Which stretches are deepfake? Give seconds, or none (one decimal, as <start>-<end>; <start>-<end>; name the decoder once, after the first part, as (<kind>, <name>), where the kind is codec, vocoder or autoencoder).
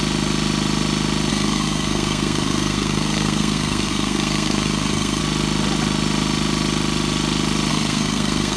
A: 1.3-5.2 (codec, SNAC); 7.7-8.6